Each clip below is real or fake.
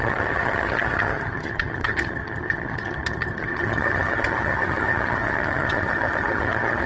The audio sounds fake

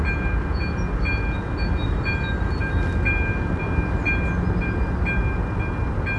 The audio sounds real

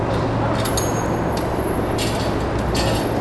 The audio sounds real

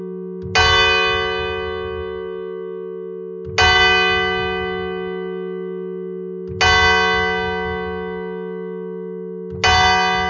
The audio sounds real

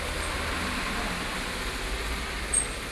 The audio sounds real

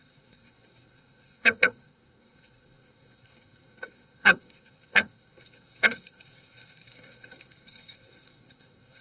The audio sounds fake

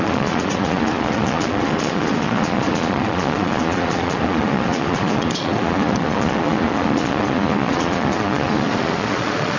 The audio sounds fake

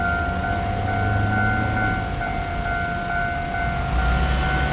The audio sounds real